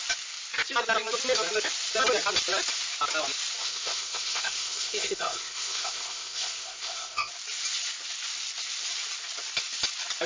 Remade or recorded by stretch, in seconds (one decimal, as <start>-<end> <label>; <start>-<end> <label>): 0.0-3.6 recorded; 3.6-7.3 remade; 7.3-10.3 recorded